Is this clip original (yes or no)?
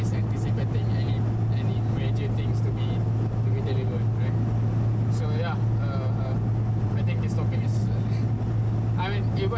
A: yes